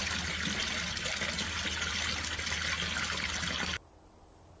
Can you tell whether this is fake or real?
real